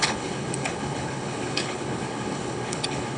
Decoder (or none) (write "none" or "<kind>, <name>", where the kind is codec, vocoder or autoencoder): codec, HILCodec